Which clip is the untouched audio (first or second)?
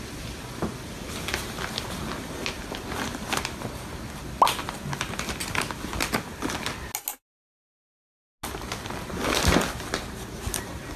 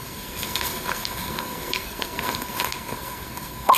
first